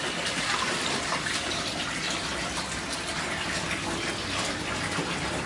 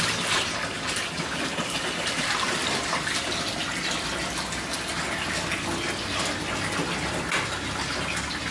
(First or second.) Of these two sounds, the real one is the second